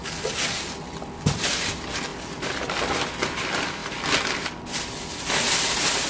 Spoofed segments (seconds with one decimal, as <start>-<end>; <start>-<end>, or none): none